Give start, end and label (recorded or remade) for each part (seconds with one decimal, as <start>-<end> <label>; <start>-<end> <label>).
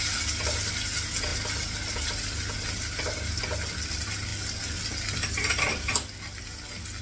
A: 0.0-7.0 recorded